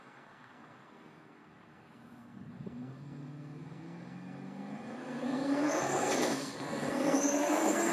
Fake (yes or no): yes